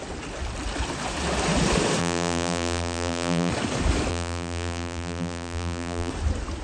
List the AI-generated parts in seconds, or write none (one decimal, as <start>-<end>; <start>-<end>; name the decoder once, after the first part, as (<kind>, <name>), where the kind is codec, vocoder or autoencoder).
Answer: 2.0-3.5 (vocoder, BigVGAN v2); 4.1-6.1